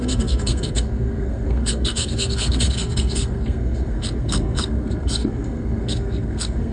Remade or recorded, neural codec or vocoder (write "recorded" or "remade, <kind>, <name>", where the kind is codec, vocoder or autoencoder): remade, codec, SNAC